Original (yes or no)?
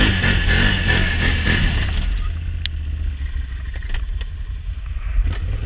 yes